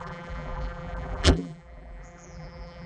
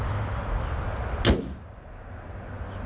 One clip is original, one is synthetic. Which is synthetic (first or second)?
first